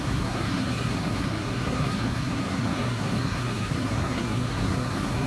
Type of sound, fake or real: fake